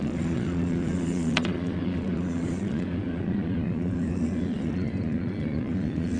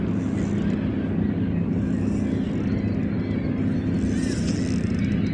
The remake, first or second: first